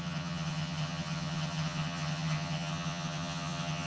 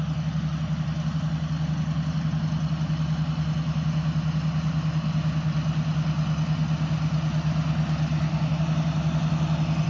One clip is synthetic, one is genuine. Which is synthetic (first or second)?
first